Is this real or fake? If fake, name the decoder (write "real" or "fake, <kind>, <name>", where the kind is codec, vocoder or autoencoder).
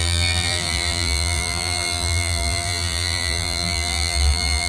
fake, vocoder, BigVGAN v2